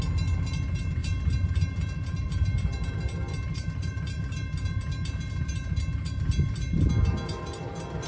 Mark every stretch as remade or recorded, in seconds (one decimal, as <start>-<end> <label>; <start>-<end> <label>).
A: 0.0-1.0 recorded; 1.0-4.9 remade; 4.9-8.1 recorded